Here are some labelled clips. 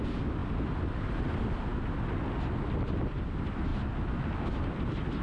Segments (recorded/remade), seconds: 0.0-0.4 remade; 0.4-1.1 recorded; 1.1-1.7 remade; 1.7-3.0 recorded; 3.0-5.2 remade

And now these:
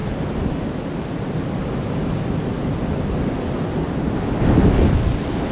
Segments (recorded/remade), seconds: 0.0-5.5 recorded

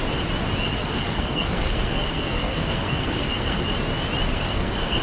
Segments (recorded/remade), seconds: 0.0-0.7 recorded; 0.7-3.7 remade; 3.7-4.3 recorded; 4.3-5.0 remade

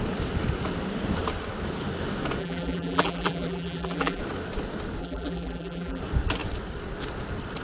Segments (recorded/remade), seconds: 0.0-2.4 recorded; 2.4-4.2 remade; 4.2-5.0 recorded; 5.0-6.0 remade; 6.0-7.6 recorded

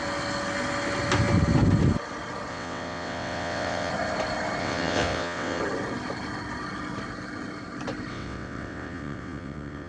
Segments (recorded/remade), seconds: 0.0-2.5 recorded; 2.5-3.9 remade; 3.9-4.6 recorded; 4.6-5.6 remade; 5.6-8.1 recorded; 8.1-9.9 remade

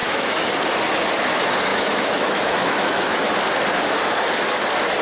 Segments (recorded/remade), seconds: 0.0-0.5 remade; 0.5-1.7 recorded; 1.7-3.3 remade; 3.3-5.0 recorded

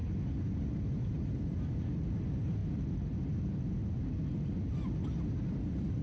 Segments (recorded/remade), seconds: 0.0-0.8 recorded; 0.8-2.6 remade; 2.6-5.4 recorded; 5.4-6.0 remade